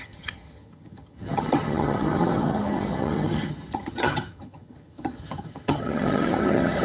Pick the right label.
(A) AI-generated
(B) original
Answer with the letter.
A